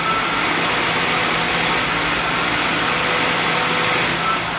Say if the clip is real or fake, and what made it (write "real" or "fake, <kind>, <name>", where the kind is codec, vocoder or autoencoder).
real